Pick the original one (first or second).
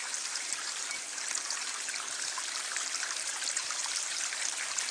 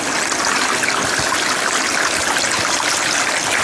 second